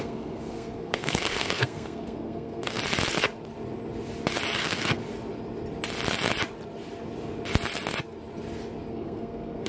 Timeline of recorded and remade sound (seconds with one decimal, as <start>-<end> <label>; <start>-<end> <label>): 0.0-2.8 remade; 2.8-4.6 recorded; 4.6-5.0 remade; 5.0-8.9 recorded; 8.9-9.7 remade